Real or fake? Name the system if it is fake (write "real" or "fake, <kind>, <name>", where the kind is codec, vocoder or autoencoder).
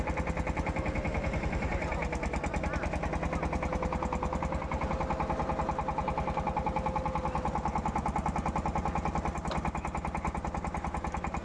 real